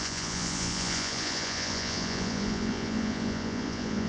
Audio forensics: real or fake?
fake